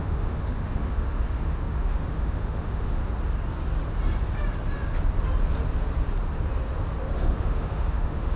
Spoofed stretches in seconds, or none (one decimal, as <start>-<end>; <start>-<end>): 0.0-3.0; 7.1-8.4